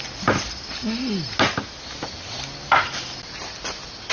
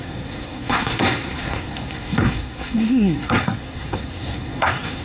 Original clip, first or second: first